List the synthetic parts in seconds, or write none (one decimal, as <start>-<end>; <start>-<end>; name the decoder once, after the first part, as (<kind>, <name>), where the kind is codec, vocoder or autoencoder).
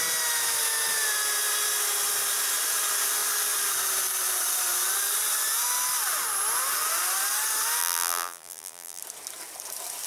7.8-9.0 (vocoder, BigVGAN v2)